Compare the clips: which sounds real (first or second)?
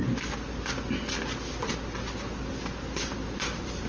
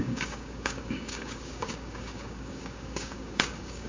first